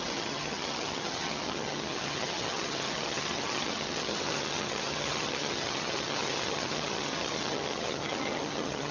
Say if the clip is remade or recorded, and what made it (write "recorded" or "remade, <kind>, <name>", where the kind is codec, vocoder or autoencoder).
remade, vocoder, HiFi-GAN